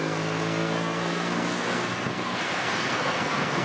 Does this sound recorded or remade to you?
remade